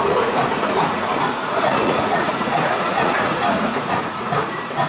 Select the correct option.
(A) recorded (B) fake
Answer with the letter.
B